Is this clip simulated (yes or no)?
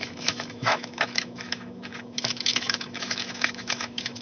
yes